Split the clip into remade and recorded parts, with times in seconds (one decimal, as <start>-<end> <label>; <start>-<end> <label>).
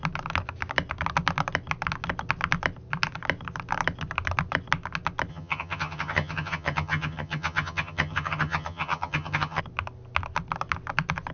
0.0-5.3 recorded; 5.3-9.6 remade; 9.6-11.3 recorded